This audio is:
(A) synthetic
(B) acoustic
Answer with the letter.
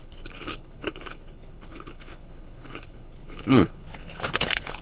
A